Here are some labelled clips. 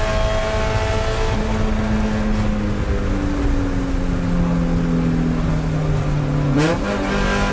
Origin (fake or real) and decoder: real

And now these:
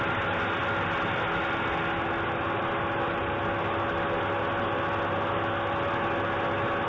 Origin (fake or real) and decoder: real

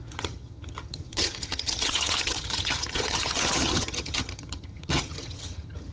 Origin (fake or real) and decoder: fake, vocoder, HiFi-GAN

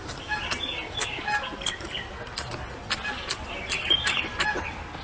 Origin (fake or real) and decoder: real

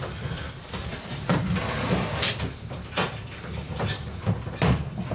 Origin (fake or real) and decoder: real